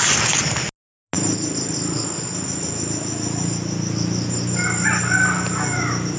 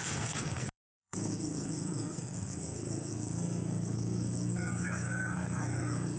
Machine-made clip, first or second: second